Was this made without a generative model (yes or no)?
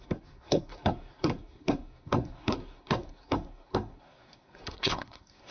no